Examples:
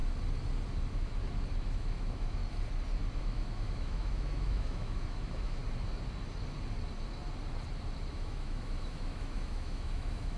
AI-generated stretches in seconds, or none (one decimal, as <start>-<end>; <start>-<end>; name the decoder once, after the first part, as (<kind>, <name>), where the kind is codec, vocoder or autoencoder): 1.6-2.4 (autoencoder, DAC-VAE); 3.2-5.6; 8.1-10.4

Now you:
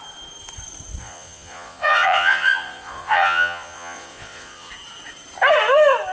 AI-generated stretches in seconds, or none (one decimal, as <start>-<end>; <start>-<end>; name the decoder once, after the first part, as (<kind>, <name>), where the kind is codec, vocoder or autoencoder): 1.0-4.7 (vocoder, Vocos)

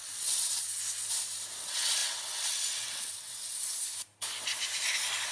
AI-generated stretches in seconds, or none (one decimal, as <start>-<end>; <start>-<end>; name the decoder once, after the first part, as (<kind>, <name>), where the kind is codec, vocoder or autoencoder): 0.0-0.8 (vocoder, WaveNeXt); 1.6-3.5